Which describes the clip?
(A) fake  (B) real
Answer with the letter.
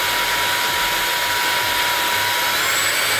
B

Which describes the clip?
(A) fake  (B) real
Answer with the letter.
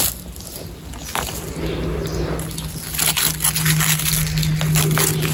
B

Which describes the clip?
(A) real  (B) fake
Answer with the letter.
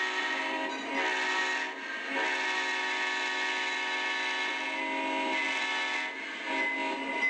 A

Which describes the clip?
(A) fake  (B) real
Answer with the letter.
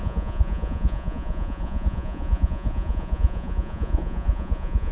A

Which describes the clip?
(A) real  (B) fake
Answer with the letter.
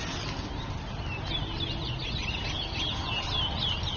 A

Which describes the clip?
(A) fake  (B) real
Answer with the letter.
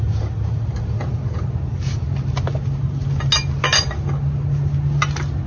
B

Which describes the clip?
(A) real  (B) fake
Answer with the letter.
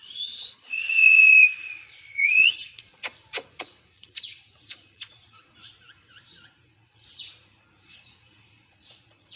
B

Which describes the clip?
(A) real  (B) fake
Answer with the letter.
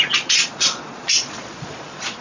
B